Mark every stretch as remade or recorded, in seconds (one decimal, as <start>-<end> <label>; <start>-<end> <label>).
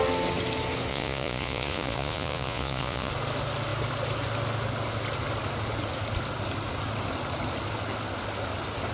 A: 0.0-0.9 recorded; 0.9-3.1 remade; 3.1-8.9 recorded